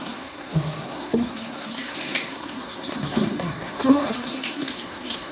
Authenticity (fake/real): fake